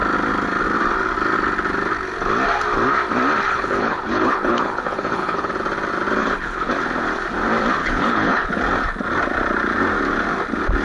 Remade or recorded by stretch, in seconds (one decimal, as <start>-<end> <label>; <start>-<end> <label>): 0.0-3.5 recorded; 3.5-5.5 remade; 5.5-6.2 recorded; 6.2-6.7 remade; 6.7-7.8 recorded; 7.8-8.6 remade; 8.6-10.8 recorded